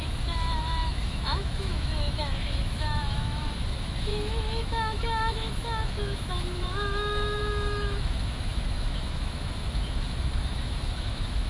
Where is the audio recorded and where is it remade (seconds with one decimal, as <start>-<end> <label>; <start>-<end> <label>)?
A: 0.0-11.5 remade